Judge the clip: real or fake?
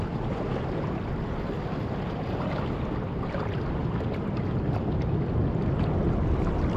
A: real